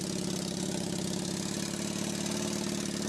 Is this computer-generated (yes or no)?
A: no